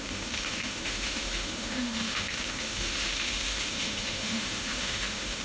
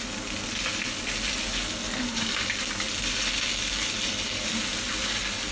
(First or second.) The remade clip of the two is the first